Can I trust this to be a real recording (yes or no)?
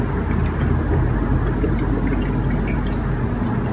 yes